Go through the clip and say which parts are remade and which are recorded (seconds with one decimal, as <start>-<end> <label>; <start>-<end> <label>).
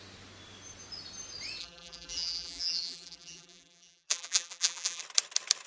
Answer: 0.0-1.6 recorded; 1.6-5.0 remade; 5.0-5.7 recorded